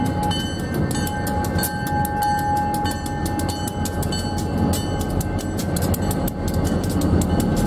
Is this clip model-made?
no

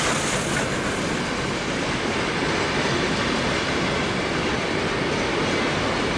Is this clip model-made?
no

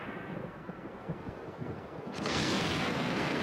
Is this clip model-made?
yes